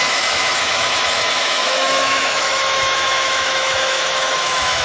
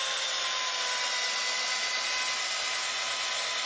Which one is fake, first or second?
first